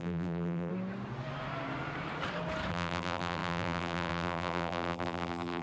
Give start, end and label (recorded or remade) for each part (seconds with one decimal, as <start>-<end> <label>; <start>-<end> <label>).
0.0-0.7 remade; 0.7-2.7 recorded; 2.7-5.6 remade